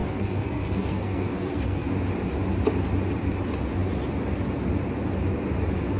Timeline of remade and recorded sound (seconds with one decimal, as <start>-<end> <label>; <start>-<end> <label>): 0.0-1.9 remade; 1.9-6.0 recorded